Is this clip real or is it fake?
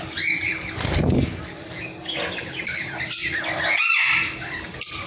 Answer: real